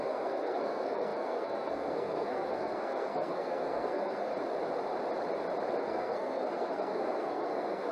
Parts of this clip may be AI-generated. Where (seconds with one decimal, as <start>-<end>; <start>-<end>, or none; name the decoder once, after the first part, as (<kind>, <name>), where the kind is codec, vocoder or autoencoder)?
0.0-4.3 (codec, SNAC); 5.8-7.9